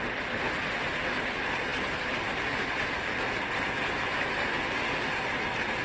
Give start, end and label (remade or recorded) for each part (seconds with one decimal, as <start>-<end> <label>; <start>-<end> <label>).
0.0-5.8 recorded